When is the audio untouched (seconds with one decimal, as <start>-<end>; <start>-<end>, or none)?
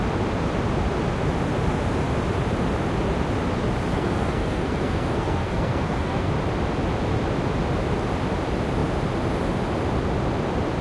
0.0-3.9; 6.3-10.8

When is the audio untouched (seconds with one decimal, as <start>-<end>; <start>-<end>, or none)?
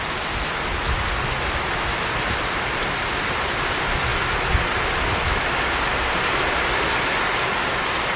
0.0-8.2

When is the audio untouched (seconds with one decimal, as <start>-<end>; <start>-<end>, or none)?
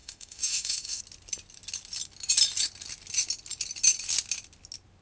1.0-5.0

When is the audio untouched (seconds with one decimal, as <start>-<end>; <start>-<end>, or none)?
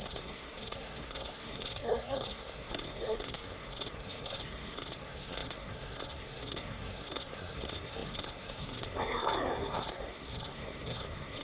none